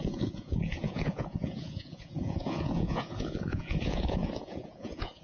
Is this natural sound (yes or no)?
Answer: no